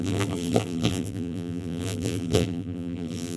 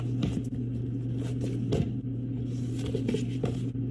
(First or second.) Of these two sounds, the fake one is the first